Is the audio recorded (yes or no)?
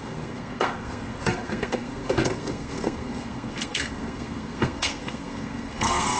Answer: no